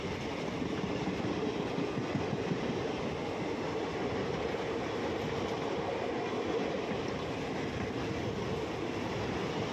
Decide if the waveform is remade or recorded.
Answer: recorded